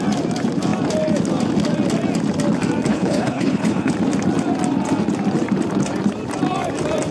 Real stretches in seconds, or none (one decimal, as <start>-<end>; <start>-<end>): 0.0-2.9; 3.9-7.1